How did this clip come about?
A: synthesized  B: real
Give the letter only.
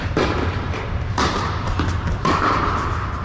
A